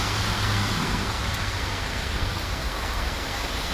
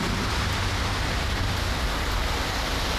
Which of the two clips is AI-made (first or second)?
first